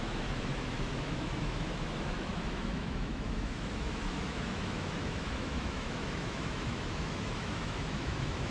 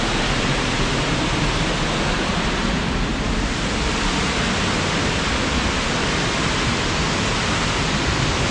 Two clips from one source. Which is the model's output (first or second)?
first